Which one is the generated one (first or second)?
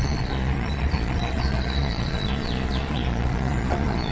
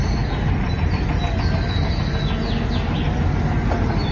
first